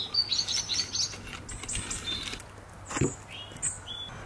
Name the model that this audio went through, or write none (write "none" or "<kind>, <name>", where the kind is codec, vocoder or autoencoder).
none